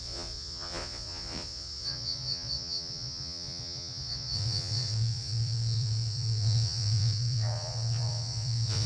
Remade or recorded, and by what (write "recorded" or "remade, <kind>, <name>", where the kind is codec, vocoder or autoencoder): remade, vocoder, Vocos